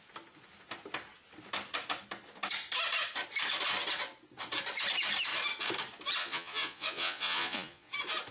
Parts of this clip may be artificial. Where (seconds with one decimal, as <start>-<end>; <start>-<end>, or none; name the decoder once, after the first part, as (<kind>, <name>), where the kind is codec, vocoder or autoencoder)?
6.2-7.9 (vocoder, Vocos)